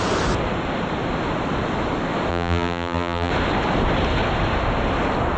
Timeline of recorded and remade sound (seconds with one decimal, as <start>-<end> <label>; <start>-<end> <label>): 0.0-2.3 recorded; 2.3-3.3 remade; 3.3-5.4 recorded

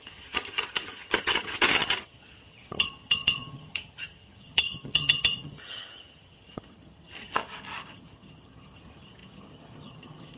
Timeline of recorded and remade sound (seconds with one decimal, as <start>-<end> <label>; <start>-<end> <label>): 0.0-10.4 remade

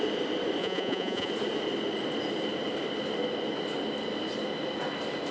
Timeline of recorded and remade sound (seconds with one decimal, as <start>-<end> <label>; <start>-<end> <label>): 0.0-0.6 recorded; 0.6-1.3 remade; 1.3-5.3 recorded

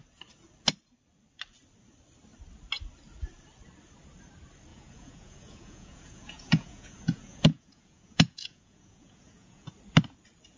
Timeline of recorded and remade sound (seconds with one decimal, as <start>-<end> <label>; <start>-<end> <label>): 0.0-4.7 recorded; 4.7-9.7 remade; 9.7-10.6 recorded